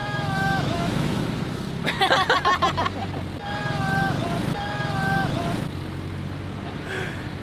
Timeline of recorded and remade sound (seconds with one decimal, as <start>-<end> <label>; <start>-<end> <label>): 0.0-1.7 remade; 1.7-7.4 recorded